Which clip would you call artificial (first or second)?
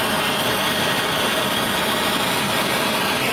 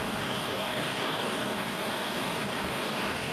second